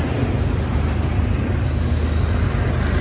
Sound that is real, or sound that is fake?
real